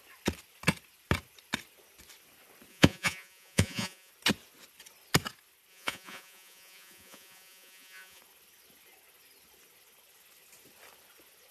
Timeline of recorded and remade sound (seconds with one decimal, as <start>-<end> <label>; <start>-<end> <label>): 0.0-2.7 recorded; 2.7-4.1 remade; 4.1-5.7 recorded; 5.7-8.2 remade; 8.2-11.5 recorded